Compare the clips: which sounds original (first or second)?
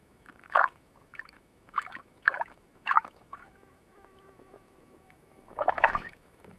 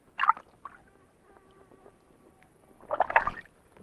second